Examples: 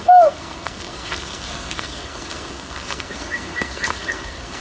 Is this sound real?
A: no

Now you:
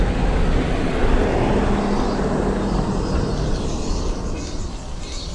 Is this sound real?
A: yes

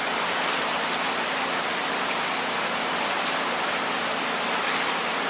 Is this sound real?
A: yes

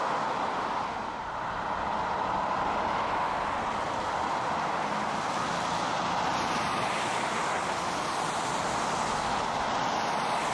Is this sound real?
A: yes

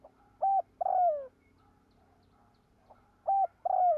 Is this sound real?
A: yes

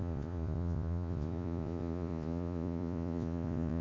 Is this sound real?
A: no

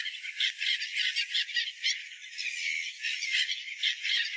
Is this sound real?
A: yes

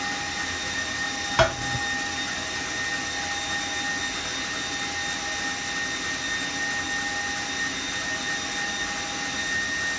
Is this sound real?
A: yes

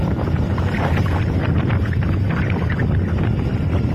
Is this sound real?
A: yes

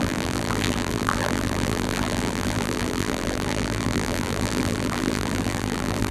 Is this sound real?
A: no